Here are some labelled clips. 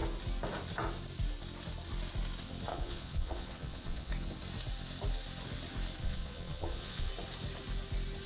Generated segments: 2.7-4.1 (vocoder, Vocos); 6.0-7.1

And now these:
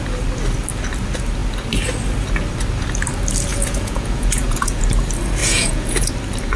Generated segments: 3.5-4.8 (vocoder, Vocos); 5.4-6.1

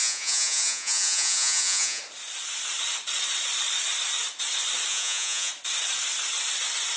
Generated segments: 0.0-2.0 (vocoder, Vocos); 4.9-5.5

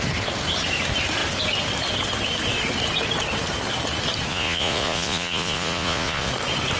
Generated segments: 4.3-6.3 (vocoder, Vocos)

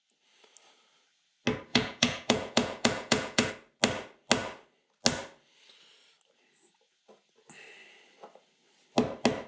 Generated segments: 1.7-3.5 (vocoder, Vocos)